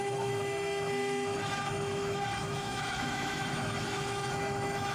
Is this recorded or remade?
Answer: remade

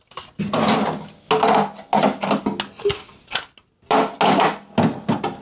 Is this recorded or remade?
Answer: recorded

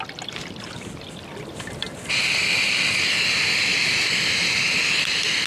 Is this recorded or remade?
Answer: recorded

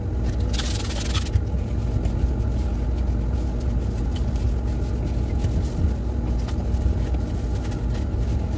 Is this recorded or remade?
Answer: recorded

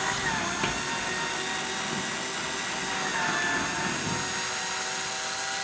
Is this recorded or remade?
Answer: recorded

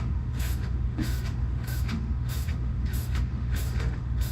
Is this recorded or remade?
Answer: remade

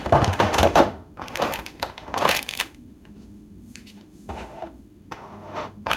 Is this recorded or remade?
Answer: remade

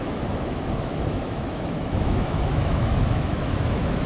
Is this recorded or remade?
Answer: remade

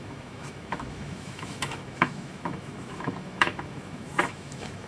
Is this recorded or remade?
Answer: remade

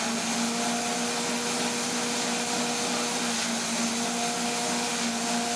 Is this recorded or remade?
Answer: recorded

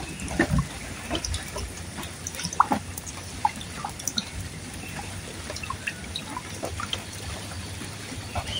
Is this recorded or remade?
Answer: recorded